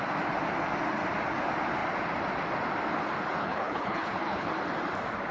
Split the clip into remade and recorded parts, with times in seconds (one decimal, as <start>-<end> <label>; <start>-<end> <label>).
0.0-3.4 recorded; 3.4-4.5 remade; 4.5-5.3 recorded